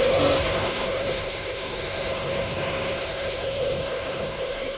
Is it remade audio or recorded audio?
remade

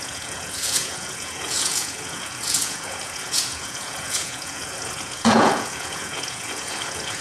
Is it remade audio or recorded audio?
remade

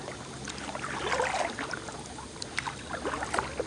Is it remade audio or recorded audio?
recorded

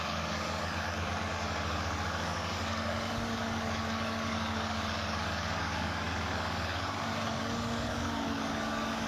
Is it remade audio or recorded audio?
remade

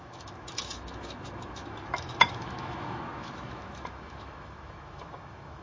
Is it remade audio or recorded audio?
remade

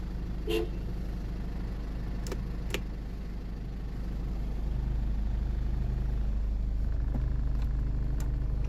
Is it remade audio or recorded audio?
recorded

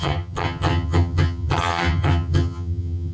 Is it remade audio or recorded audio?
remade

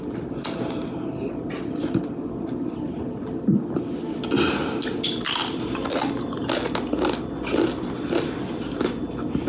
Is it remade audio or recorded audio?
recorded